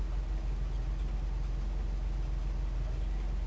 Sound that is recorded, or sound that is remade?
recorded